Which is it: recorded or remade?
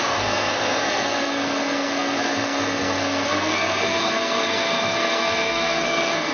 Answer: remade